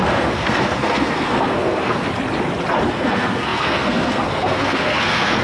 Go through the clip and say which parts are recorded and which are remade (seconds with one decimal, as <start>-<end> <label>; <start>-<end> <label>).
0.0-2.1 remade; 2.1-2.9 recorded; 2.9-5.4 remade